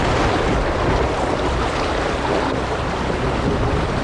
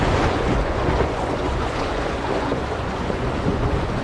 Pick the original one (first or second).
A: first